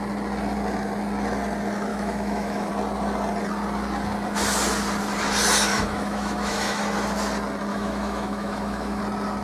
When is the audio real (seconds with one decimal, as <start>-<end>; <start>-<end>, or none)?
0.0-1.9; 2.7-5.7; 6.8-7.7; 9.0-9.4